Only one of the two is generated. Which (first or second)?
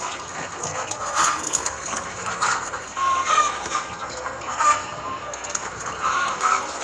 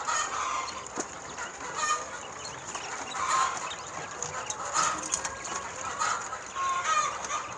first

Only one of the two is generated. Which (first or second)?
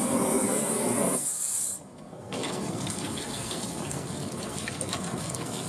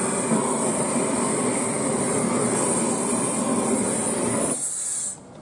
first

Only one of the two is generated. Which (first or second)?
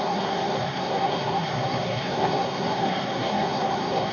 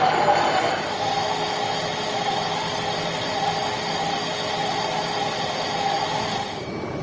first